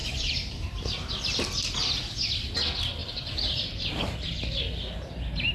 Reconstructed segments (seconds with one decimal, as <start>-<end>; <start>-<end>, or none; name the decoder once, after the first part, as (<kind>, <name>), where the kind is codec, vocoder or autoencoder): 0.0-1.1 (vocoder, BigVGAN v2); 3.0-4.6

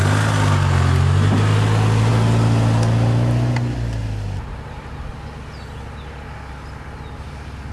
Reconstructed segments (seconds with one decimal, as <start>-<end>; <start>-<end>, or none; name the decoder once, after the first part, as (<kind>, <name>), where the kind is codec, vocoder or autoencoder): none

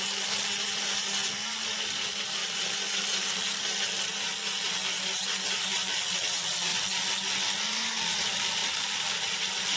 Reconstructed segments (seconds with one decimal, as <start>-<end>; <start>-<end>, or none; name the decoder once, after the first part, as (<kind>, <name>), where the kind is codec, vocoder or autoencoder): none

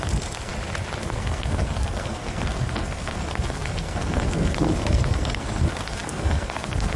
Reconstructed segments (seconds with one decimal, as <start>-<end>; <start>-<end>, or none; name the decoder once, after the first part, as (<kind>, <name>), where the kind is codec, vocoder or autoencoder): 0.0-0.5 (codec, SNAC); 1.0-7.0